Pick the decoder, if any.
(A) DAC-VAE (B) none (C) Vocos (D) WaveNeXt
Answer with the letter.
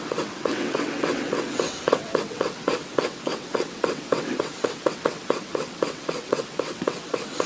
D